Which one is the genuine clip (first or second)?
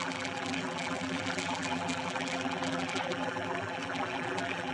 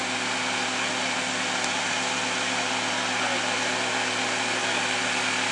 second